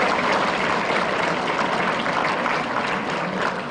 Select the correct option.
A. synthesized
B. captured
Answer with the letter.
B